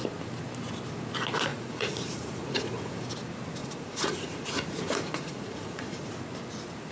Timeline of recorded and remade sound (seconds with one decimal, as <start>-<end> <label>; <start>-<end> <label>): 0.0-1.5 recorded; 1.5-3.1 remade; 3.1-3.6 recorded; 3.6-6.1 remade; 6.1-6.9 recorded